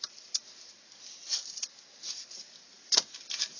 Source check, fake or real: real